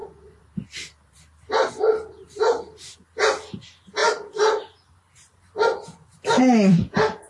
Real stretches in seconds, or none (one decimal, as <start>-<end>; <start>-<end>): 1.7-7.3